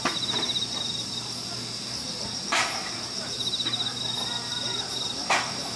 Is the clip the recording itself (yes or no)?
no